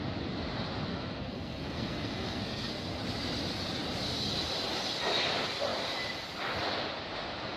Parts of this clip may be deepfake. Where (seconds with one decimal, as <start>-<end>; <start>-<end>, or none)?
0.9-3.0